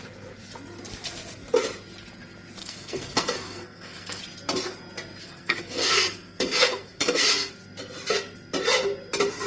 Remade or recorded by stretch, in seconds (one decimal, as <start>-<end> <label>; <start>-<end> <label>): 0.0-2.6 recorded; 2.6-4.2 remade; 4.2-5.2 recorded; 5.2-7.5 remade; 7.5-9.5 recorded

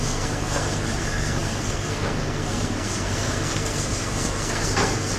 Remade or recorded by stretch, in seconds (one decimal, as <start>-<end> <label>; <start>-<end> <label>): 0.0-5.2 remade

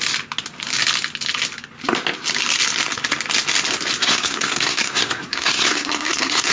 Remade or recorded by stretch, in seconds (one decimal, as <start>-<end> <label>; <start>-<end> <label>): 0.0-4.0 recorded; 4.0-6.5 remade

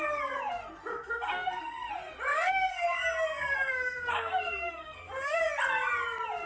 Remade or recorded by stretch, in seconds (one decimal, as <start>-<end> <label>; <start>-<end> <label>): 0.0-0.9 recorded; 0.9-1.9 remade; 1.9-2.3 recorded; 2.3-5.4 remade; 5.4-6.5 recorded